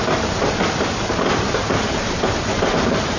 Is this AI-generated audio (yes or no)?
yes